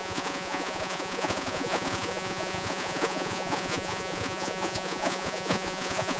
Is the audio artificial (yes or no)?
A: yes